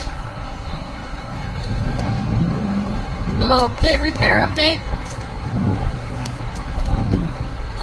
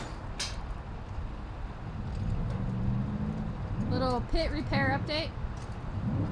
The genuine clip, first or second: second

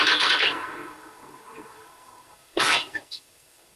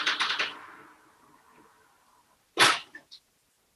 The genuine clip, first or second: second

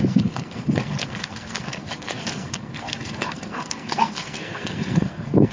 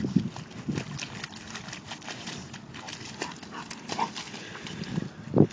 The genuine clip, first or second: second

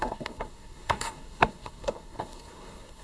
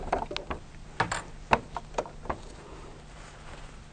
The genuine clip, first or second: second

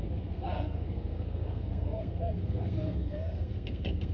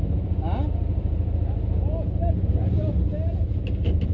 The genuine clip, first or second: second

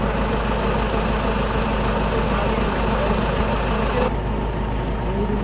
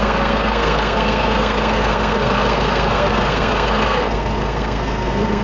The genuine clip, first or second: first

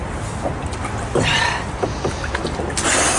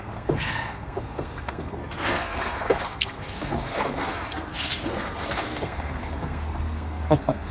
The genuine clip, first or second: first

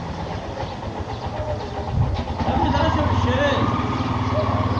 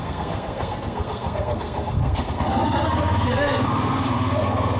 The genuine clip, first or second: first